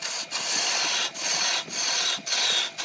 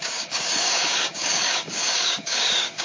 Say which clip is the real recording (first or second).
first